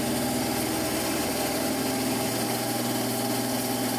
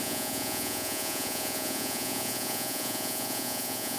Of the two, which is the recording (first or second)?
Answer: first